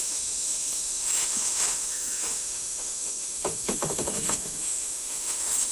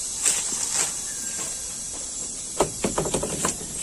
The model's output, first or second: first